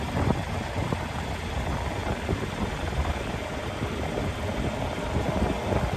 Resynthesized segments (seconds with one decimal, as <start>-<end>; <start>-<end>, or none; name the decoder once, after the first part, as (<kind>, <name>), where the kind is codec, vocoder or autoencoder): none